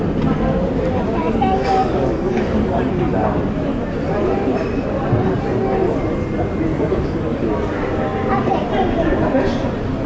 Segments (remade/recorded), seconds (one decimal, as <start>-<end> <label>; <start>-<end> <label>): 0.0-1.2 recorded; 1.2-2.9 remade; 2.9-6.7 recorded; 6.7-7.5 remade; 7.5-10.1 recorded